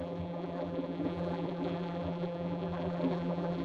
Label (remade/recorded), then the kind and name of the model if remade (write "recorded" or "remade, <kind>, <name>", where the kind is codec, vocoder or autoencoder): remade, vocoder, BigVGAN v2